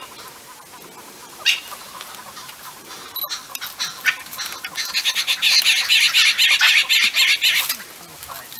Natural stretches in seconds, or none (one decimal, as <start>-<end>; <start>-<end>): 0.0-1.2; 3.2-8.6